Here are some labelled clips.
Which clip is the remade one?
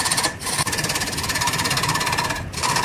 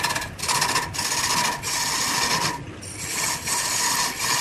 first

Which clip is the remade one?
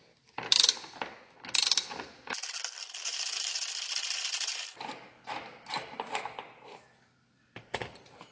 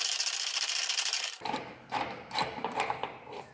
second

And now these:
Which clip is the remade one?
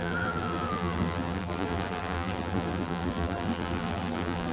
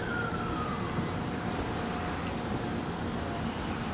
first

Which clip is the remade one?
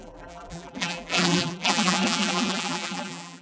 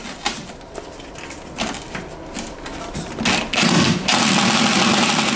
first